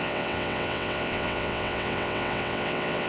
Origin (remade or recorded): remade